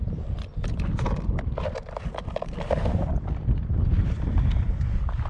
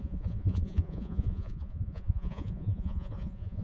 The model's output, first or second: second